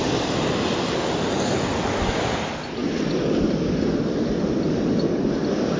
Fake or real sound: real